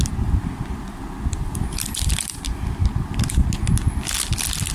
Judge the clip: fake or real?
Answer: fake